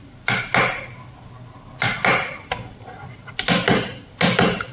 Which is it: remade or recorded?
recorded